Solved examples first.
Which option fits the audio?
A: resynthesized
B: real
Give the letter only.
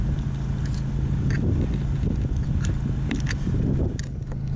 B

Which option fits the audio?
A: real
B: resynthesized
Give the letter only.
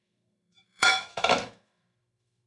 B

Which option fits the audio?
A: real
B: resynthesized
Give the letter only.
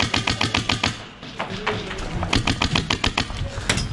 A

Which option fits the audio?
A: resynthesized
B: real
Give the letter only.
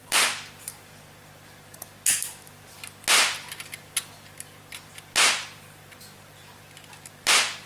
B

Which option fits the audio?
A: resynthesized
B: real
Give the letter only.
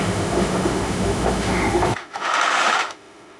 A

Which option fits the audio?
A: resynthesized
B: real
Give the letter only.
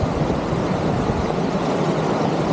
B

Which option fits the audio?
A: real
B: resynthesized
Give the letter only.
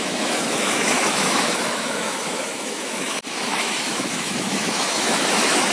B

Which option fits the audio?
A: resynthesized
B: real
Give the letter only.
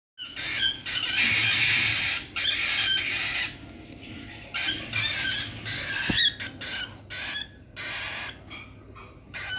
B